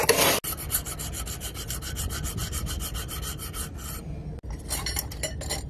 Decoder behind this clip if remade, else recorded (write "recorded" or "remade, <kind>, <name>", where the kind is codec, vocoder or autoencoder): recorded